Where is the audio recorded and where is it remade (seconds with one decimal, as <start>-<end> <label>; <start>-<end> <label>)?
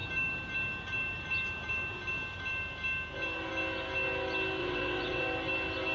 0.0-4.6 recorded; 4.6-5.2 remade; 5.2-5.9 recorded